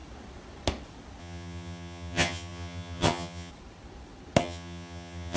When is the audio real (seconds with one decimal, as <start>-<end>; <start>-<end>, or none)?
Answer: 0.0-1.2; 3.5-4.4